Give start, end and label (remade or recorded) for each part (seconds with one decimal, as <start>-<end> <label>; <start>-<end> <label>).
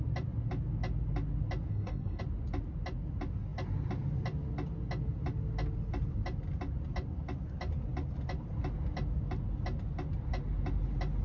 0.0-1.7 recorded; 1.7-2.2 remade; 2.2-11.2 recorded